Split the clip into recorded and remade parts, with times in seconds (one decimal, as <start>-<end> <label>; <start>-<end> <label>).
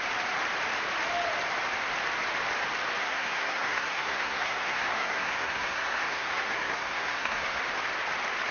0.0-3.0 recorded; 3.0-7.6 remade; 7.6-8.5 recorded